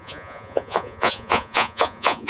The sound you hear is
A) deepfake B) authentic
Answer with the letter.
A